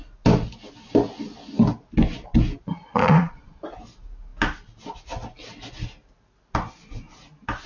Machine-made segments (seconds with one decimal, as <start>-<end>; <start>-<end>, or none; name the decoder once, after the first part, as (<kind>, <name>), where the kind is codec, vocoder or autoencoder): 2.9-3.6 (vocoder, Vocos)